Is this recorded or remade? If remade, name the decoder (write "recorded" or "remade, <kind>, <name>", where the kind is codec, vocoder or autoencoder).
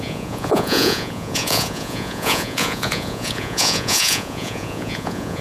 remade, vocoder, Vocos